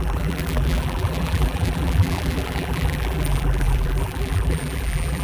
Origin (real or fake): fake